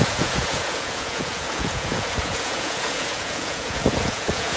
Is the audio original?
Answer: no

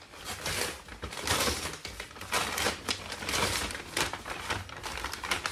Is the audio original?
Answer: yes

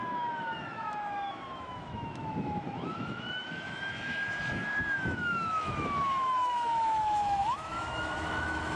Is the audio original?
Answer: no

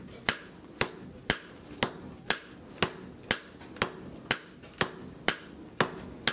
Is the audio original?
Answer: yes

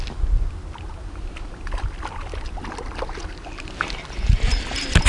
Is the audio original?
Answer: yes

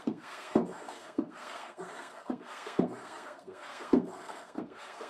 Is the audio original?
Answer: no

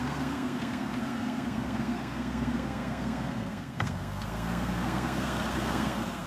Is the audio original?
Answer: no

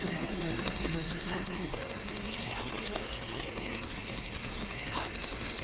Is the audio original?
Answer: no